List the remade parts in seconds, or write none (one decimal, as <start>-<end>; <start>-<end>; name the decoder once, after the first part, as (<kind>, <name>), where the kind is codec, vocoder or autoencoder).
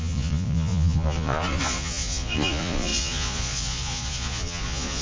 0.0-5.0 (vocoder, Vocos)